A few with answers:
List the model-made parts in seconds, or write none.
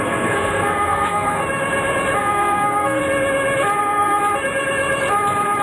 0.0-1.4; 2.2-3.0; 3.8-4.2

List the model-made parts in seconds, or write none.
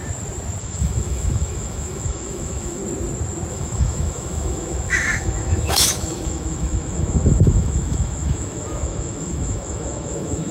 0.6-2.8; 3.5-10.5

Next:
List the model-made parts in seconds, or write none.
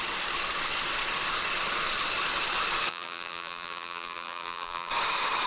2.9-4.9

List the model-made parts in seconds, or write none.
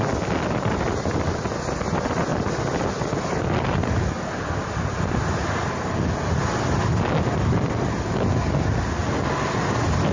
none